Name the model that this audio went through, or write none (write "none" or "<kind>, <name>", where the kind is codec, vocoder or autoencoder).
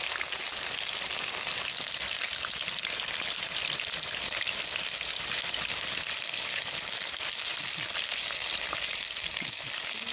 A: none